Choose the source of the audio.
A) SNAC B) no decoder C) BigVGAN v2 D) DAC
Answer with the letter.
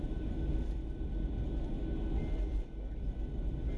B